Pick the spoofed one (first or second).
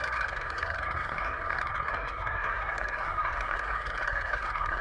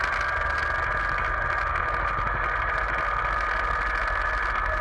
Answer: first